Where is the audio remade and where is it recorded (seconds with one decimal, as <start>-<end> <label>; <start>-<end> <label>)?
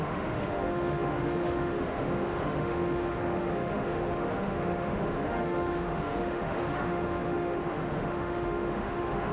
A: 0.0-9.3 remade